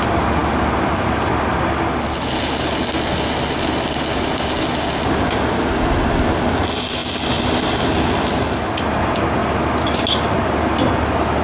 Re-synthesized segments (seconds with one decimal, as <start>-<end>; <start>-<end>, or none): none